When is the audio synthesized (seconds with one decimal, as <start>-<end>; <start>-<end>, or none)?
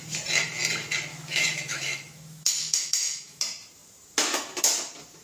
1.1-3.4